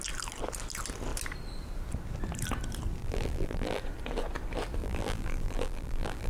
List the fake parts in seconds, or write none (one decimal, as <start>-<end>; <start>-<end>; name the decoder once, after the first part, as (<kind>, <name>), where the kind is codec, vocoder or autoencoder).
3.0-3.8 (vocoder, BigVGAN v2); 4.8-6.3